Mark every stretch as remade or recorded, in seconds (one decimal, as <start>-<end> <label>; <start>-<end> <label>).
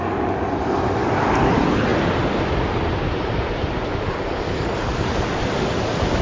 0.0-6.2 recorded